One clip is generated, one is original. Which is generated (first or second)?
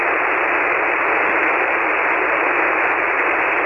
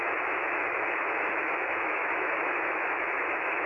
second